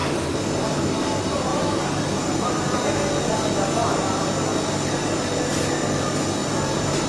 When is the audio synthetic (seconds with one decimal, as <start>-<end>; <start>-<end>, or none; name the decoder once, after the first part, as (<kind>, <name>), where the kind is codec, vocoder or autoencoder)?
0.0-0.7 (vocoder, BigVGAN v2); 1.5-2.8; 6.4-7.1